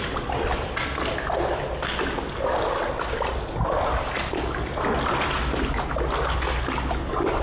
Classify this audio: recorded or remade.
recorded